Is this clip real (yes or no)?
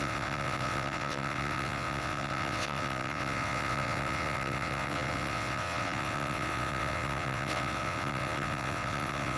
no